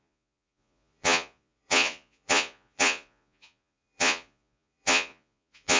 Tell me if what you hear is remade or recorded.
remade